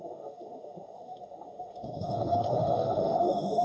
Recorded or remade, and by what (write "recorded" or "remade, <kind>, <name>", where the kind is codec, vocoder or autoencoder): remade, autoencoder, DAC-VAE